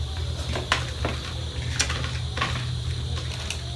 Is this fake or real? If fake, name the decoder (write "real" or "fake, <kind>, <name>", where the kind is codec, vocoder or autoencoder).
real